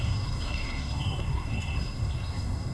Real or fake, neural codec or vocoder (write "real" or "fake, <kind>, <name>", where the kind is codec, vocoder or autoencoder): fake, codec, SNAC